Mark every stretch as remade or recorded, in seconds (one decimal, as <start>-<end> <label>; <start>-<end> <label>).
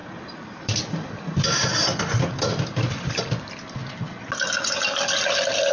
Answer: 0.0-3.4 remade; 3.4-5.7 recorded